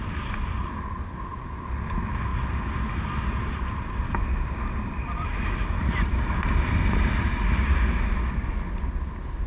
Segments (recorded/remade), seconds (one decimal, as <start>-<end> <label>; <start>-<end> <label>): 0.0-9.5 recorded